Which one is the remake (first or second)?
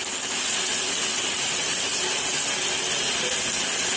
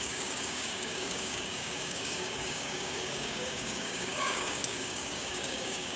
second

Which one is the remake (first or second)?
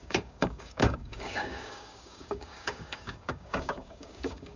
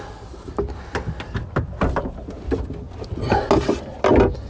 first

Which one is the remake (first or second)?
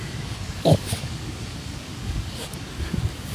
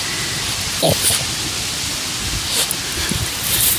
first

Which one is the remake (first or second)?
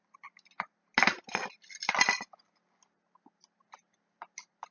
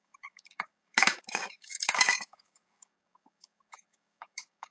second